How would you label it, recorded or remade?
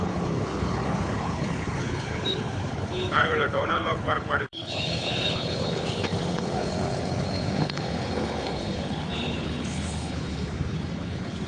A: remade